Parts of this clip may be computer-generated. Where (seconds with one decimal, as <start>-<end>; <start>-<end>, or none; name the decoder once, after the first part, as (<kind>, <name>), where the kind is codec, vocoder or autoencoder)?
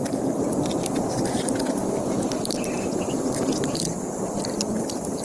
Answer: none